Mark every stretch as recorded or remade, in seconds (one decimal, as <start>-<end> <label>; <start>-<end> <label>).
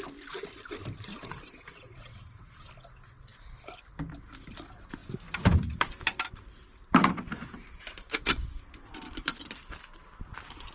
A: 0.0-1.1 recorded; 1.1-2.7 remade; 2.7-10.7 recorded